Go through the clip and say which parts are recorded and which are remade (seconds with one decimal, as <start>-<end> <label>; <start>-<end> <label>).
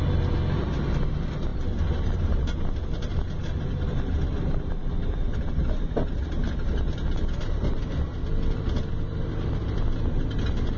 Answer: 0.0-1.5 recorded; 1.5-6.3 remade; 6.3-10.8 recorded